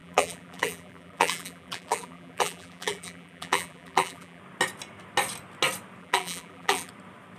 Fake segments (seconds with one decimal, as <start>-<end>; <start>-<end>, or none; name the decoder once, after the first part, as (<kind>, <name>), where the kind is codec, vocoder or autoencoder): 0.0-4.4 (vocoder, BigVGAN v2); 6.0-6.9